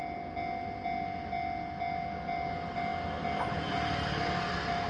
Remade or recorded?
recorded